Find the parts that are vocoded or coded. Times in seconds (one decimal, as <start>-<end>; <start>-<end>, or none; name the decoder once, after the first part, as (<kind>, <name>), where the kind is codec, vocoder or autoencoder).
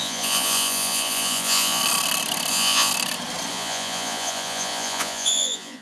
0.0-1.8 (vocoder, Vocos); 2.5-2.9; 3.5-5.8